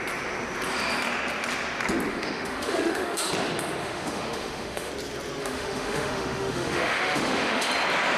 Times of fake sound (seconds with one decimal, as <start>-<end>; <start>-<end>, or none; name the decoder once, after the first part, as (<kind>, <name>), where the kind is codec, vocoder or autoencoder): 2.1-3.3 (autoencoder, DAC-VAE); 3.8-4.9; 5.4-7.7